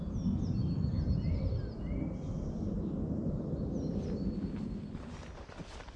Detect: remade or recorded recorded